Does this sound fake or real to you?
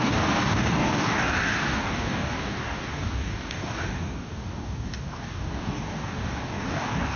fake